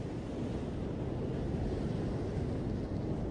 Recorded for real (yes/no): yes